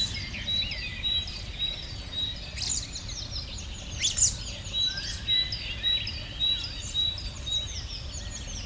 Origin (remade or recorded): recorded